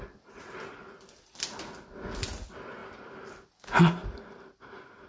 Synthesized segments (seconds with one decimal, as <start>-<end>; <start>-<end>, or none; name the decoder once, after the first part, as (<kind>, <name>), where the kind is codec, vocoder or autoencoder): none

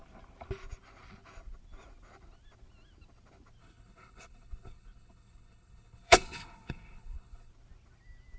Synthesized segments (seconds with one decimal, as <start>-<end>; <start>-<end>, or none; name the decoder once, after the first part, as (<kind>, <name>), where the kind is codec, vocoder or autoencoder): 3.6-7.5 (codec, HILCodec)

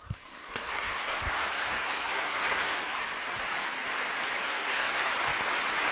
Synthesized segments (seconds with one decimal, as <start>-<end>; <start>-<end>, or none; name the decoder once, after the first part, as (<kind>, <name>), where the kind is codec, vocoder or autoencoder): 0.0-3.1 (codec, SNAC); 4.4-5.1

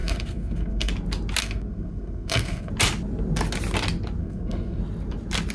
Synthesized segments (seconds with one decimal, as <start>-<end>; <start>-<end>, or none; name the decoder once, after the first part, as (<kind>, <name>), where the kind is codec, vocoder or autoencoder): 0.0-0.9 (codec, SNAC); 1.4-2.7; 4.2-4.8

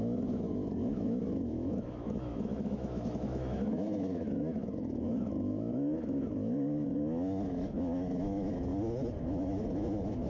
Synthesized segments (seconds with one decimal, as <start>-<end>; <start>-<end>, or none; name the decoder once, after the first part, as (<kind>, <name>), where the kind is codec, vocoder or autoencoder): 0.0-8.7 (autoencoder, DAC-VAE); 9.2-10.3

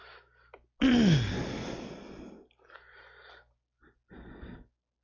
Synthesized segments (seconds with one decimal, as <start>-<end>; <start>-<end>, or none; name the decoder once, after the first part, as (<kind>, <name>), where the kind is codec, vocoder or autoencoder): none